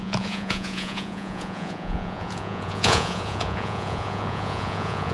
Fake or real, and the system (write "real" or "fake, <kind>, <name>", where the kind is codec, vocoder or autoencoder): fake, vocoder, Vocos